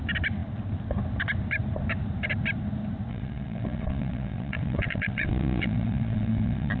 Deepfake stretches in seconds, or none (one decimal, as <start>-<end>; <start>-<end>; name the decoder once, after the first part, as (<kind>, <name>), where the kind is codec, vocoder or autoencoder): 3.1-6.8 (vocoder, WaveNeXt)